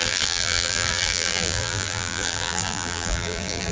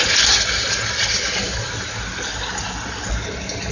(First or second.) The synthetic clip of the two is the first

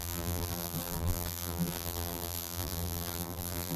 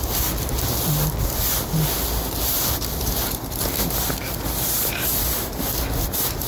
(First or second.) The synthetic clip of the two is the first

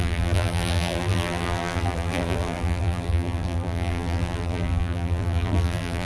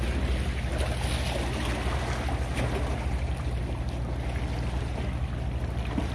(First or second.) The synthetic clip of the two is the first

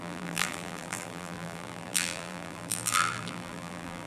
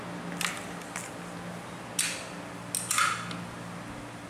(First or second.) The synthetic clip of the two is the first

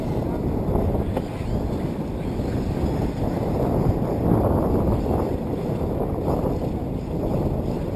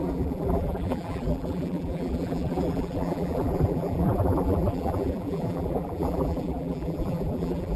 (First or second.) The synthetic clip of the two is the second